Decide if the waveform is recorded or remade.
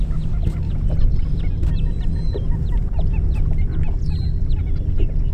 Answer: recorded